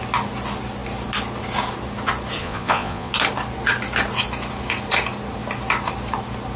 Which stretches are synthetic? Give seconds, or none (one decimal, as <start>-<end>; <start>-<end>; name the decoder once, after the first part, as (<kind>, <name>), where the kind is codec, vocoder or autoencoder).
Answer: 2.4-3.1 (vocoder, Vocos)